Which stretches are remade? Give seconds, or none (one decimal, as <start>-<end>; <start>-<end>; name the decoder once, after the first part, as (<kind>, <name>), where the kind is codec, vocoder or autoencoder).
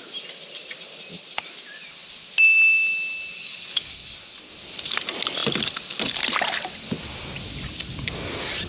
3.3-3.9 (codec, DAC)